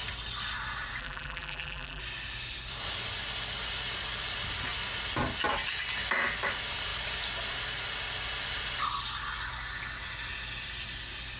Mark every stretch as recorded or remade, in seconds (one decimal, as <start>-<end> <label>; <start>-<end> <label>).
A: 0.0-1.0 recorded; 1.0-2.0 remade; 2.0-11.4 recorded